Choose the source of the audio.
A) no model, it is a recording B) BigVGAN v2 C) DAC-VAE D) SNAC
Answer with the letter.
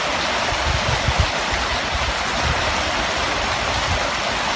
A